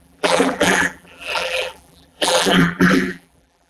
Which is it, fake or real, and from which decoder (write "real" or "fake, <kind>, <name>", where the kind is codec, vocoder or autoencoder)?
fake, vocoder, BigVGAN v2